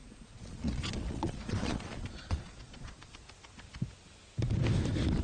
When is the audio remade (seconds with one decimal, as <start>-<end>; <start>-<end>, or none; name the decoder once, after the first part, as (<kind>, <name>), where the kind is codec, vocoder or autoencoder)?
0.0-3.1 (vocoder, Vocos)